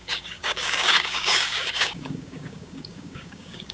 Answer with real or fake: fake